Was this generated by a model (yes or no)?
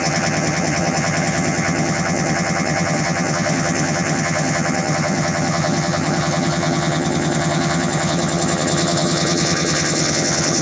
yes